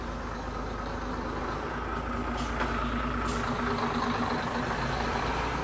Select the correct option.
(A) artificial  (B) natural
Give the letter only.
B